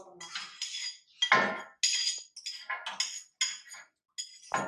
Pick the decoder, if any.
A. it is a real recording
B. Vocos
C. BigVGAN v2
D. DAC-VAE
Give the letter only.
A